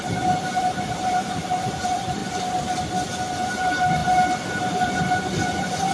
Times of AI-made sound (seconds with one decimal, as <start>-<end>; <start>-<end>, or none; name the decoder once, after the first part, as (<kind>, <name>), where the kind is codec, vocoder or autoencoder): 0.0-2.2 (vocoder, BigVGAN v2); 3.5-4.0; 4.7-5.9